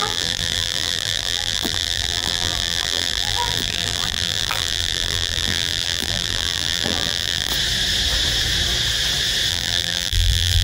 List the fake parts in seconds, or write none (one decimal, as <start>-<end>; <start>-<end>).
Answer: 0.0-7.5; 9.5-10.6